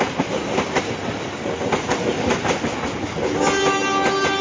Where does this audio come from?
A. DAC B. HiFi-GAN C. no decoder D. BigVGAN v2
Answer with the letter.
C